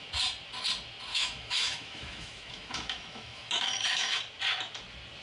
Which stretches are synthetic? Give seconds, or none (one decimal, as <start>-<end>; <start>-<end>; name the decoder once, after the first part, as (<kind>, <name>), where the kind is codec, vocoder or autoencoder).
1.1-4.2 (autoencoder, DAC-VAE)